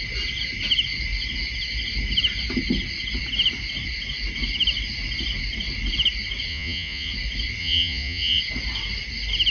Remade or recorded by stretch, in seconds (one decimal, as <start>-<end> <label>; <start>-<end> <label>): 0.0-6.5 recorded; 6.5-7.1 remade; 7.1-7.6 recorded; 7.6-8.4 remade; 8.4-9.5 recorded